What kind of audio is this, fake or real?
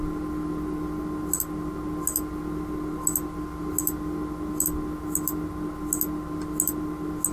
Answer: real